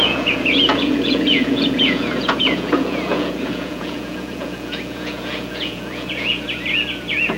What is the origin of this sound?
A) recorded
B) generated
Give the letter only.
B